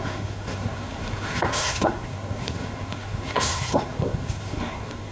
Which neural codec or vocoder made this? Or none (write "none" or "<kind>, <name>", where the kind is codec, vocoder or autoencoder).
codec, SNAC